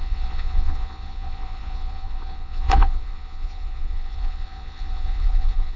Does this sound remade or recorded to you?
remade